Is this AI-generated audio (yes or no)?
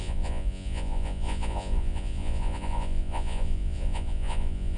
yes